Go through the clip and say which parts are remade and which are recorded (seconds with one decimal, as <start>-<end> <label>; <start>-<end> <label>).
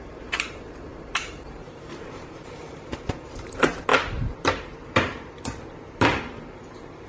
0.0-7.1 remade